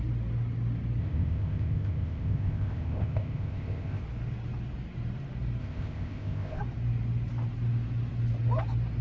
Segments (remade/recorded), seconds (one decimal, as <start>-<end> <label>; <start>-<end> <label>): 0.0-1.0 recorded; 1.0-4.0 remade; 4.0-5.6 recorded; 5.6-6.6 remade; 6.6-9.0 recorded